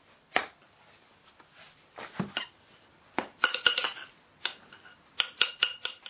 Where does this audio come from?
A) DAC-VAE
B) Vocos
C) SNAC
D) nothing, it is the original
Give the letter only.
D